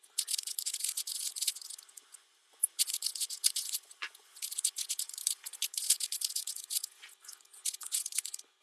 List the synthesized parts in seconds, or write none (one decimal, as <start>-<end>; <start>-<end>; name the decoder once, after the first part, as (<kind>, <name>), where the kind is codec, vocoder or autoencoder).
0.0-8.6 (vocoder, Vocos)